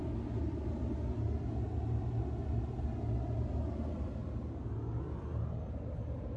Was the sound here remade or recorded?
recorded